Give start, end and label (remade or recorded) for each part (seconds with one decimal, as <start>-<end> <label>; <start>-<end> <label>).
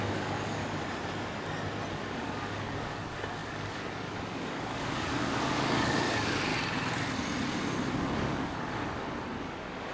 0.0-0.6 remade; 0.6-1.9 recorded; 1.9-6.5 remade; 6.5-7.9 recorded; 7.9-9.9 remade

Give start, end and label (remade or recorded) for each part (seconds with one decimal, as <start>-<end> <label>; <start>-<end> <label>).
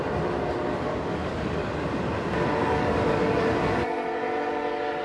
0.0-0.7 recorded; 0.7-1.7 remade; 1.7-2.6 recorded; 2.6-3.4 remade; 3.4-5.0 recorded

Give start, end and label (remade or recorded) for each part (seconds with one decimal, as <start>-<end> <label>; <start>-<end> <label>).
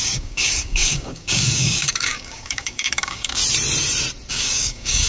0.0-3.4 remade; 3.4-4.3 recorded; 4.3-5.1 remade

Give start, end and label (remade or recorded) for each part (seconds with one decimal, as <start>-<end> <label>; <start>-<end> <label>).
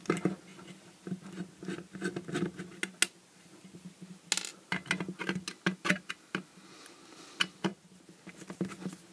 0.0-9.1 recorded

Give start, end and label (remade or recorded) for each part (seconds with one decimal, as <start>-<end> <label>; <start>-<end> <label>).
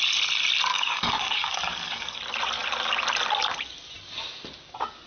0.0-0.7 recorded; 0.7-2.2 remade; 2.2-5.1 recorded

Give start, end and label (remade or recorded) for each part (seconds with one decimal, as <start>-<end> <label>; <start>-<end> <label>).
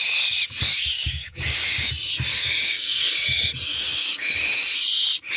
0.0-0.7 recorded; 0.7-1.9 remade; 1.9-2.3 recorded; 2.3-3.1 remade; 3.1-3.7 recorded; 3.7-4.3 remade; 4.3-5.4 recorded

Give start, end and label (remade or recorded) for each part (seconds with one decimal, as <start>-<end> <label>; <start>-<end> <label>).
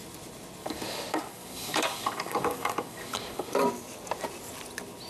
0.0-0.6 recorded; 0.6-3.7 remade; 3.7-5.1 recorded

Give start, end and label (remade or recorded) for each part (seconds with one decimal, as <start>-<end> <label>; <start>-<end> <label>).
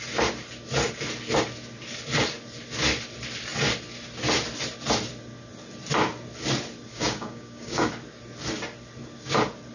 0.0-6.9 recorded; 6.9-7.9 remade; 7.9-9.7 recorded